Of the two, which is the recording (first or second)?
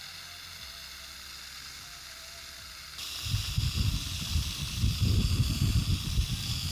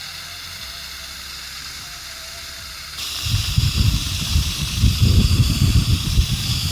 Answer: first